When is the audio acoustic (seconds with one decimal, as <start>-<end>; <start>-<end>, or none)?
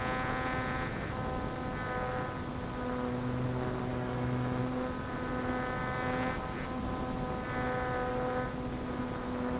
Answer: 0.0-3.9; 4.6-9.6